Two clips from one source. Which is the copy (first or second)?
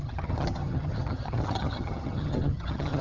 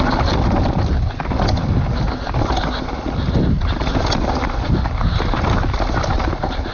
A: first